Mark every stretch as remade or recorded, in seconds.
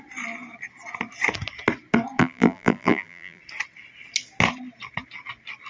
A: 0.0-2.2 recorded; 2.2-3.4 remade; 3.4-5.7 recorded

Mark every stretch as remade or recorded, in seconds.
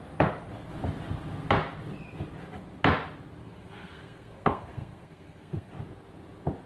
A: 0.0-3.4 recorded; 3.4-5.7 remade; 5.7-6.7 recorded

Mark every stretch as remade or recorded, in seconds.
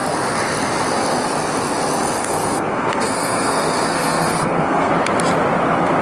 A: 0.0-2.2 recorded; 2.2-4.9 remade; 4.9-6.0 recorded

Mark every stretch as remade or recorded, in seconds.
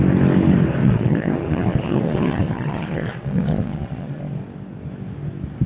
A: 0.0-0.8 recorded; 0.8-4.2 remade; 4.2-5.7 recorded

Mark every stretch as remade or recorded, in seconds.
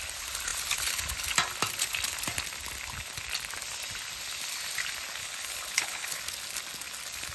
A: 0.0-5.2 recorded; 5.2-6.2 remade; 6.2-7.3 recorded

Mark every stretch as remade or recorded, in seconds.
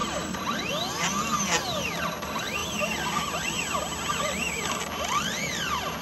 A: 0.0-0.7 remade; 0.7-6.0 recorded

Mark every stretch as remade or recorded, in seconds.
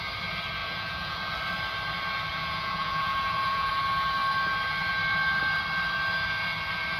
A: 0.0-0.6 recorded; 0.6-1.4 remade; 1.4-2.3 recorded; 2.3-3.7 remade; 3.7-7.0 recorded